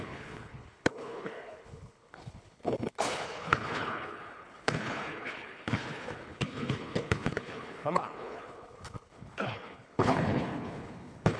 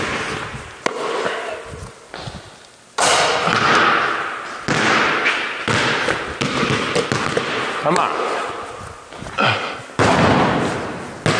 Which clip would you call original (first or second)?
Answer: second